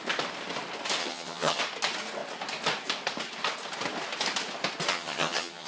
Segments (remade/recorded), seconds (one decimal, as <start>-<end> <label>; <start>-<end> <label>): 0.0-1.0 recorded; 1.0-1.6 remade; 1.6-4.9 recorded; 4.9-5.7 remade